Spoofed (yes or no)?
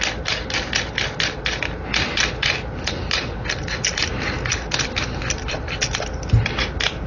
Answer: no